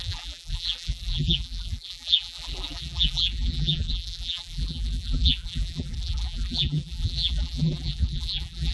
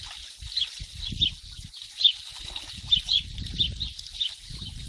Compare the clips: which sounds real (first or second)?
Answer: second